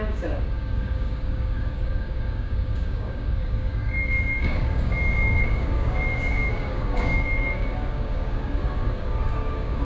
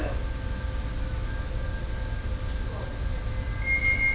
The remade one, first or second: first